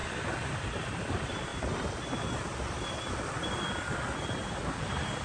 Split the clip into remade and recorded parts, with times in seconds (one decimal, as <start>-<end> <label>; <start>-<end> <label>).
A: 0.0-1.5 remade; 1.5-4.6 recorded; 4.6-5.2 remade